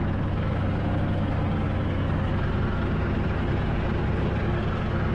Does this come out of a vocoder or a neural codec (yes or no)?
no